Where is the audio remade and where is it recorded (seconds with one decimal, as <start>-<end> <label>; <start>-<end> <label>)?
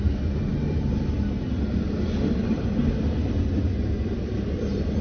0.0-5.0 recorded